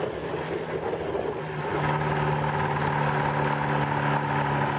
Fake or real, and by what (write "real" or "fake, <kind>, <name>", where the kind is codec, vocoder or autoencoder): real